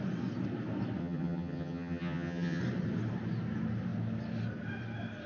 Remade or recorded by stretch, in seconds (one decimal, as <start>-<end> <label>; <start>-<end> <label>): 0.0-1.0 recorded; 1.0-2.6 remade; 2.6-5.3 recorded